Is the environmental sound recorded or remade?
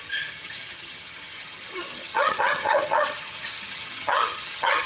remade